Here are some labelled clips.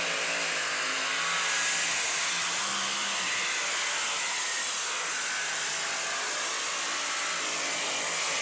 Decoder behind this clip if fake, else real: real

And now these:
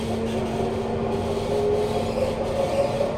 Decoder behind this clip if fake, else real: real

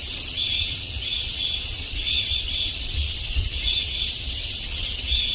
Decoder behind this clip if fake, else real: fake, vocoder, WaveNeXt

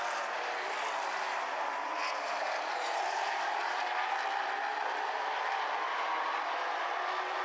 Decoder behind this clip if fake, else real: fake, vocoder, BigVGAN v2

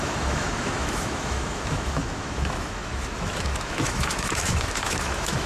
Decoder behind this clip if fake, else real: fake, autoencoder, DAC-VAE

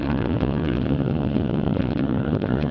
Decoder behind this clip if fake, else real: fake, vocoder, Vocos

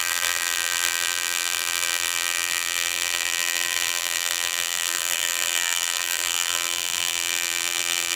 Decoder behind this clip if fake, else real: fake, vocoder, BigVGAN v2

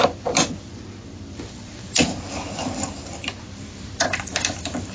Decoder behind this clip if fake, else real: fake, vocoder, BigVGAN v2